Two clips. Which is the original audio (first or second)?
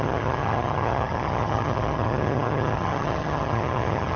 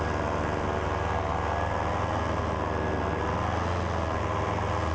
second